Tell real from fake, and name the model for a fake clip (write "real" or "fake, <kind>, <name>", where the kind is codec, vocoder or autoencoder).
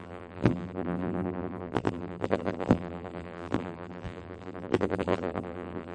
fake, vocoder, BigVGAN v2